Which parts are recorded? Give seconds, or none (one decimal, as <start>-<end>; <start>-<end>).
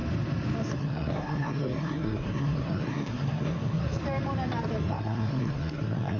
0.0-0.7; 4.0-4.8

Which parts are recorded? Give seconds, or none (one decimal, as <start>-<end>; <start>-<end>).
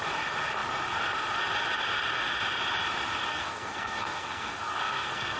0.0-3.3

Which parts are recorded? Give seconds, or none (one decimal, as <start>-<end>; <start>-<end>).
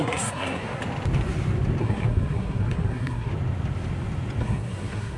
0.8-1.8; 3.3-4.4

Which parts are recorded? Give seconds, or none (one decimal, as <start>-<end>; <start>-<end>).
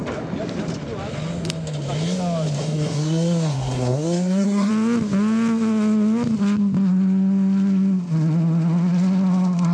0.0-2.6; 4.7-9.7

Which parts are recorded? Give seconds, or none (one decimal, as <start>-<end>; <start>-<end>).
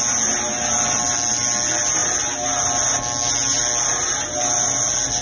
0.0-5.2